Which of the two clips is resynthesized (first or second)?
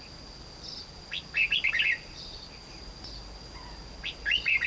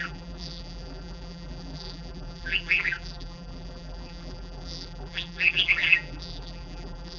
second